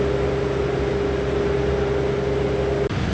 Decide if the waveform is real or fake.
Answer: real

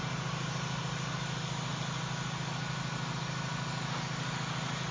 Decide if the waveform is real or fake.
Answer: real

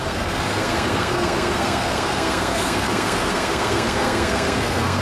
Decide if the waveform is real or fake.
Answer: fake